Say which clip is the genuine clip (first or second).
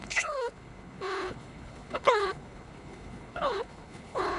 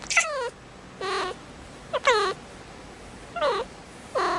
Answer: second